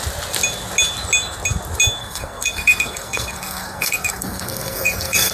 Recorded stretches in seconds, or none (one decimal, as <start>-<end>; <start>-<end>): 0.0-2.0